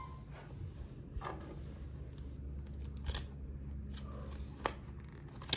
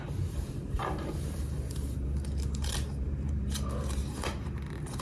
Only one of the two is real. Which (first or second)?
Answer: first